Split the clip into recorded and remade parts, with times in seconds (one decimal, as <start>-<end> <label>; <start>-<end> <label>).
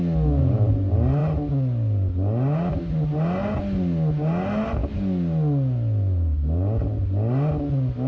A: 0.0-8.1 recorded